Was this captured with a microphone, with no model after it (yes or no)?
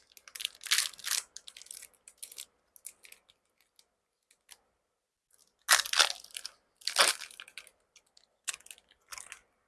yes